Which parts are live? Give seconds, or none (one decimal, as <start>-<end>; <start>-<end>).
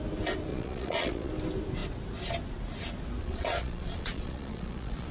0.0-0.5; 1.3-3.2